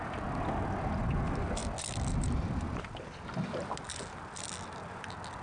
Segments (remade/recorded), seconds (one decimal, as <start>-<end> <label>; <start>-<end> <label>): 0.0-5.4 recorded